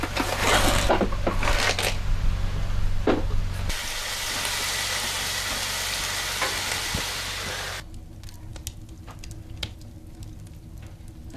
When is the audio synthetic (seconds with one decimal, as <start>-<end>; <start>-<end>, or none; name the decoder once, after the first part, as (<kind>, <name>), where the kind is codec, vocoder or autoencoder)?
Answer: none